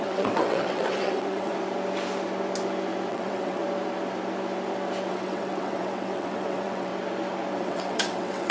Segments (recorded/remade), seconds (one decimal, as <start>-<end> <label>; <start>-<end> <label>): 0.0-1.5 remade; 1.5-3.1 recorded; 3.1-3.6 remade; 3.6-5.1 recorded; 5.1-6.9 remade; 6.9-7.5 recorded; 7.5-8.5 remade

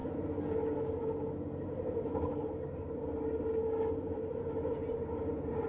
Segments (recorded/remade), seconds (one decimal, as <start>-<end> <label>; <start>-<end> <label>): 0.0-5.7 recorded

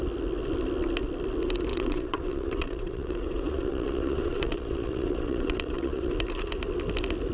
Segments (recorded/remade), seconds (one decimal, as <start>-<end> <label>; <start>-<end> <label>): 0.0-1.7 recorded; 1.7-6.1 remade; 6.1-7.3 recorded

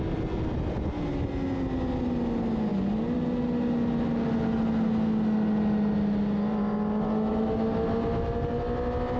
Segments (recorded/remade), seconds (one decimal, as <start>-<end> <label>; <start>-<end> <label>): 0.0-9.2 recorded

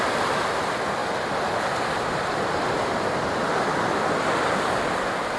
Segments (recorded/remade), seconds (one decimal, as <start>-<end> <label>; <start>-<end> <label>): 0.0-5.4 recorded

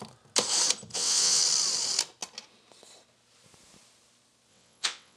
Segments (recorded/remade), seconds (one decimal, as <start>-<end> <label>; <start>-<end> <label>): 0.0-0.9 recorded; 0.9-1.4 remade; 1.4-4.5 recorded; 4.5-5.2 remade

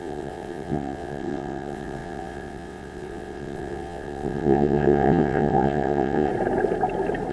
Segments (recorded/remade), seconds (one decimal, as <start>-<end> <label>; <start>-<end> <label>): 0.0-6.3 remade; 6.3-7.3 recorded